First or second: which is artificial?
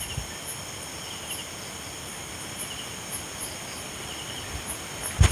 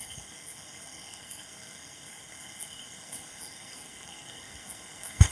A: second